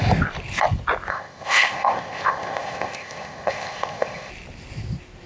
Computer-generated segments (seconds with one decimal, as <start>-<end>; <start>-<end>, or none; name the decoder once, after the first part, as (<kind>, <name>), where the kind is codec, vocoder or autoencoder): 1.1-4.3 (codec, ZipCodec)